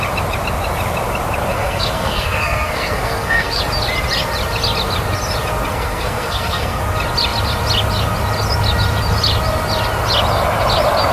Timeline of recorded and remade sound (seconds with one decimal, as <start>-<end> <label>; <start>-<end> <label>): 0.0-1.5 recorded; 1.5-3.6 remade; 3.6-5.7 recorded; 5.7-6.8 remade; 6.8-11.1 recorded